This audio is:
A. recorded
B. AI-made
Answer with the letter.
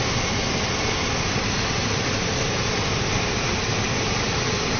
A